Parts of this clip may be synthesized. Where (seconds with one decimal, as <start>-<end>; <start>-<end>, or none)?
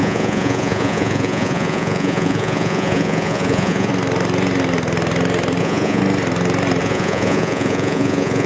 0.0-3.9; 5.6-6.0; 6.8-8.5